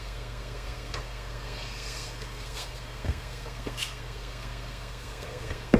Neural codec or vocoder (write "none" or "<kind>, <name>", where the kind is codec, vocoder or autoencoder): codec, SNAC